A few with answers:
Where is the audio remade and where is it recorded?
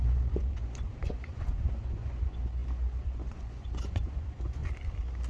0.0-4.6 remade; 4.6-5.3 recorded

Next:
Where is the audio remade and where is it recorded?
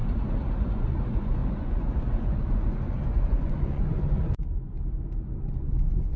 0.0-0.6 recorded; 0.6-4.8 remade; 4.8-5.5 recorded; 5.5-6.2 remade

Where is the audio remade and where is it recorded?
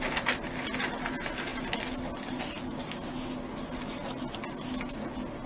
0.0-5.5 recorded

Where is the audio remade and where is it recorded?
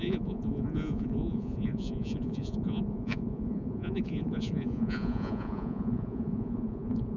0.0-7.2 remade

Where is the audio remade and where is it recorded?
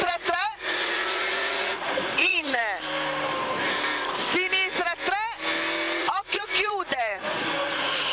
0.0-2.6 remade; 2.6-6.0 recorded; 6.0-8.1 remade